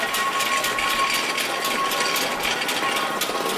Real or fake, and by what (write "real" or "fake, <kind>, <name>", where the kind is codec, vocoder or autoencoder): real